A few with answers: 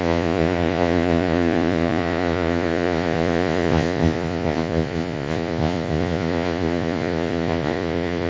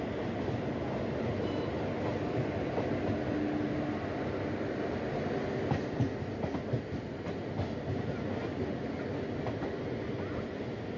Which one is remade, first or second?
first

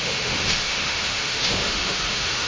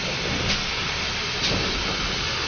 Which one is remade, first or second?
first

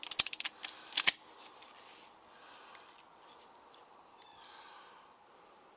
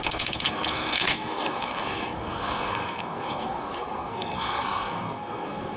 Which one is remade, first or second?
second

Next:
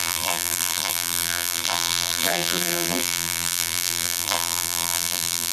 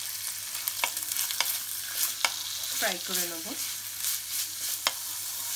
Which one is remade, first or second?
first